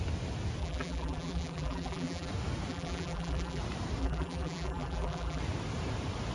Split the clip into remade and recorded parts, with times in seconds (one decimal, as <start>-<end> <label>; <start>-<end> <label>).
0.0-0.6 recorded; 0.6-2.3 remade; 2.3-2.7 recorded; 2.7-3.6 remade; 3.6-4.0 recorded; 4.0-5.4 remade; 5.4-6.3 recorded